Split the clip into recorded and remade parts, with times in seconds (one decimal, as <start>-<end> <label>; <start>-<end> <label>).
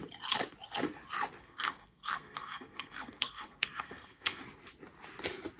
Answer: 0.0-1.4 recorded; 1.4-4.4 remade; 4.4-5.6 recorded